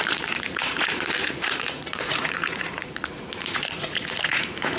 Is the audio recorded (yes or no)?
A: no